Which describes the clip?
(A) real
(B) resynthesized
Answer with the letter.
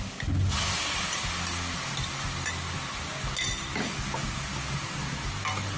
A